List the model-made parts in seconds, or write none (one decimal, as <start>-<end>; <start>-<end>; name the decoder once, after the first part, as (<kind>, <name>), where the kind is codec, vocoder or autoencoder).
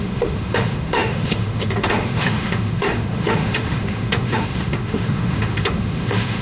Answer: 0.0-6.4 (autoencoder, DAC-VAE)